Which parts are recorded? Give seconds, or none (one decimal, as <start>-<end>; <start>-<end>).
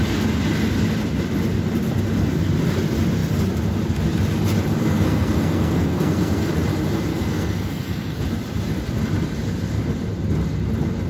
0.0-4.8; 6.5-7.1; 8.2-11.1